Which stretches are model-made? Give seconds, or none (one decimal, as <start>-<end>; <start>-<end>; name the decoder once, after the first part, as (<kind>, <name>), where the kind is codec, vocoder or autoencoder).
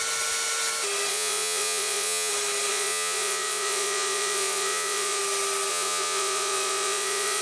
1.1-2.3 (vocoder, Vocos); 2.7-5.2; 5.7-7.4